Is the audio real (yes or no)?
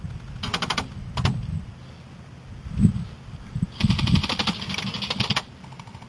yes